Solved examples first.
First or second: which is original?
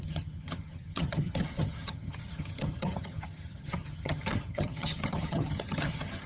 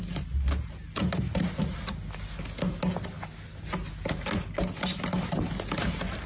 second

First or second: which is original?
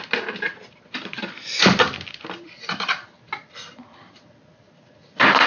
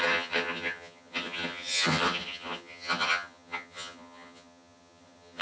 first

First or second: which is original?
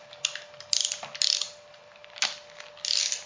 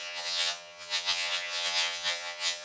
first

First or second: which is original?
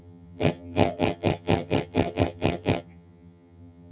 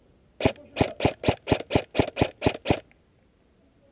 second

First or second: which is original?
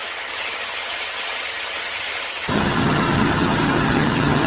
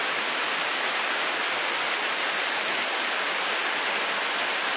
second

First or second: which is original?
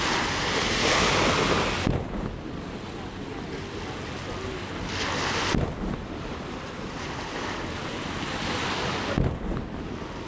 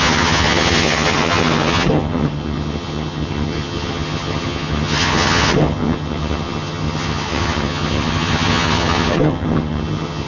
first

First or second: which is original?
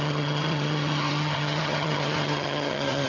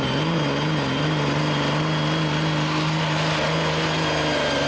second